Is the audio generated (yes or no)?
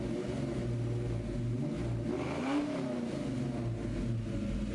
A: no